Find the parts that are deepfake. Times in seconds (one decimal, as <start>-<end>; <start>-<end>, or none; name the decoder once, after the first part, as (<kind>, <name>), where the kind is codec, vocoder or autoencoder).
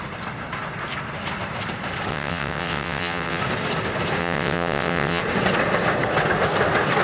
2.1-3.4 (vocoder, WaveNeXt); 4.2-5.2